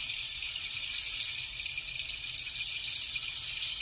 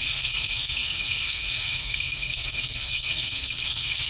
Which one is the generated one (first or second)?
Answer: second